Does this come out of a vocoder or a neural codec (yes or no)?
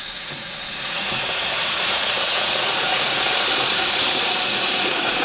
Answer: yes